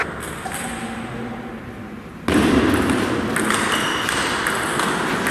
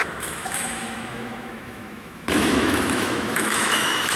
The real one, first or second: first